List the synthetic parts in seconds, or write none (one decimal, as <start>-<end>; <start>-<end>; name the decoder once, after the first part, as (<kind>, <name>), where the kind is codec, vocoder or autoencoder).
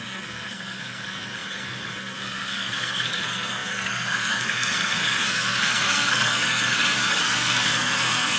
0.0-8.4 (codec, SNAC)